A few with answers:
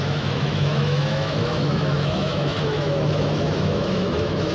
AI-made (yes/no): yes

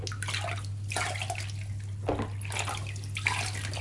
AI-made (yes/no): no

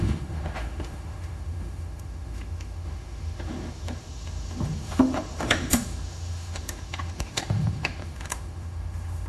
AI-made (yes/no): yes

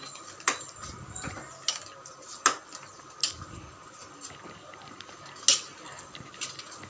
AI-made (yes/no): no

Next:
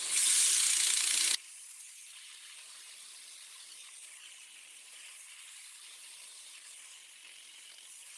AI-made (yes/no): no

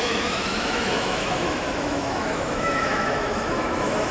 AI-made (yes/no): yes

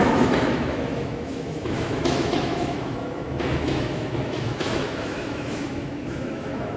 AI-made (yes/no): yes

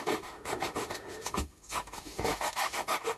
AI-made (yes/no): yes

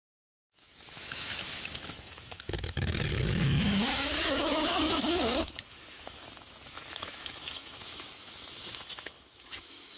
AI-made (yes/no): yes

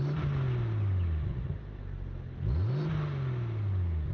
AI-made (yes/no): no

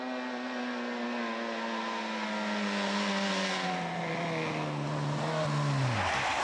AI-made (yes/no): no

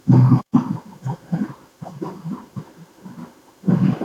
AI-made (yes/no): yes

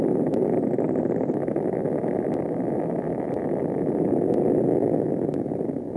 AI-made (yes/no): no